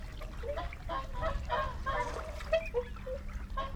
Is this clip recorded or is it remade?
recorded